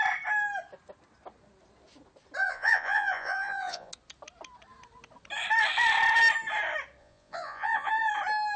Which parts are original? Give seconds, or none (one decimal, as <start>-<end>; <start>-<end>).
0.0-2.4; 3.9-7.0; 7.9-8.6